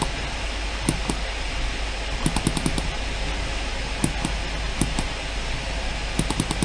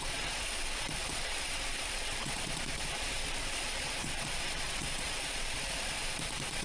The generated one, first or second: second